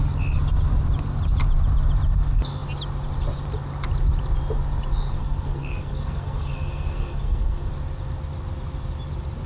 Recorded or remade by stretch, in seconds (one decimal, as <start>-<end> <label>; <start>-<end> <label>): 0.0-5.2 recorded; 5.2-7.7 remade; 7.7-9.5 recorded